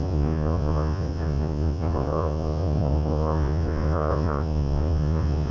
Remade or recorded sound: remade